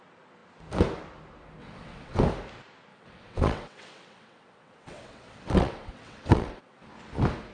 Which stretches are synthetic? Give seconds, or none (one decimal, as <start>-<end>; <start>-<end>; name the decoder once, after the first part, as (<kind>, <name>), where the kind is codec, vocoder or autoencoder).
1.6-2.2 (vocoder, WaveNeXt); 2.9-6.9